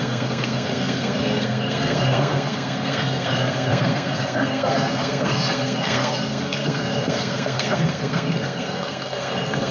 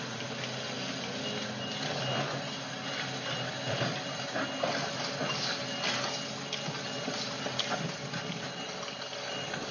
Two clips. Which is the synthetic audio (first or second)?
first